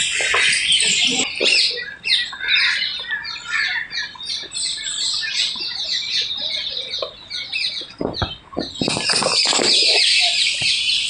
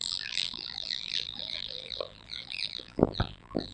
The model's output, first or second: second